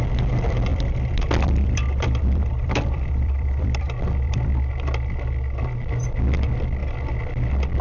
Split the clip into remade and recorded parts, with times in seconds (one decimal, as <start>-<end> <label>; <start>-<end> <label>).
0.0-0.7 recorded; 0.7-4.7 remade; 4.7-7.8 recorded